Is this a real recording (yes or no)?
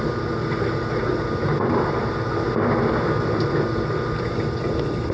yes